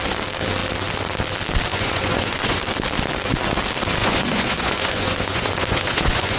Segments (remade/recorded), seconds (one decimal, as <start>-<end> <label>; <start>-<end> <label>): 0.0-1.7 recorded; 1.7-2.6 remade; 2.6-4.0 recorded; 4.0-6.4 remade